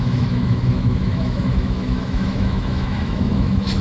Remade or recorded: remade